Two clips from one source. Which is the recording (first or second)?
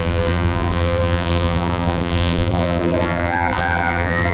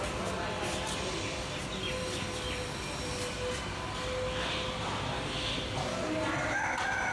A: second